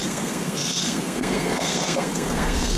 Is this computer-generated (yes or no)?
yes